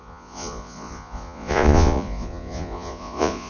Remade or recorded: remade